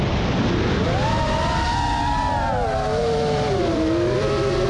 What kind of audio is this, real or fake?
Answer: real